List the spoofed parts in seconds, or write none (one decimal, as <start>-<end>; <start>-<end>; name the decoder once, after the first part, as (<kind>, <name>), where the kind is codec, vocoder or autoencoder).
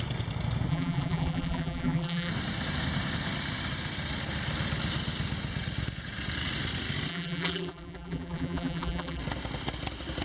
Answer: 0.7-2.3 (vocoder, BigVGAN v2); 7.1-9.2